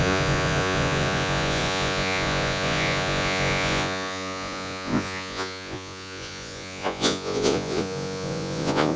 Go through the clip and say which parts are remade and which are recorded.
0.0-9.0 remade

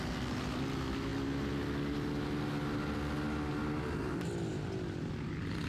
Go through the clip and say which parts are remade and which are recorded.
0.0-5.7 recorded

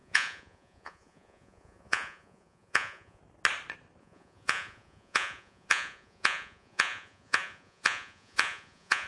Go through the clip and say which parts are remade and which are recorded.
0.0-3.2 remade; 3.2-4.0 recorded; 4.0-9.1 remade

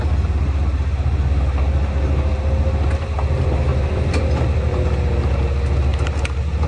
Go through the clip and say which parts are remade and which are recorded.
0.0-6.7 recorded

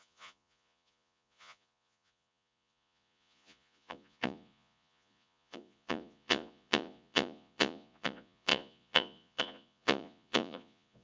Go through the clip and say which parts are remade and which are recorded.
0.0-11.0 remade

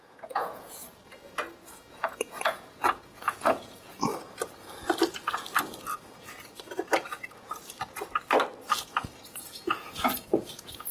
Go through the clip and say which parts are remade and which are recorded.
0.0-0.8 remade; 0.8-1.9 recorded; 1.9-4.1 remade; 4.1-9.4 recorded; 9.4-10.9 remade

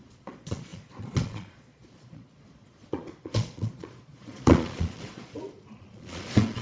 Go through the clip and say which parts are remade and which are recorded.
0.0-6.6 remade